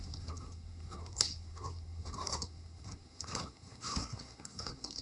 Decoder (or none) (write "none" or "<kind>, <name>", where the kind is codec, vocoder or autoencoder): codec, SNAC